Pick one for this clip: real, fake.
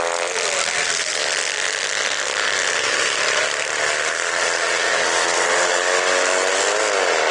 real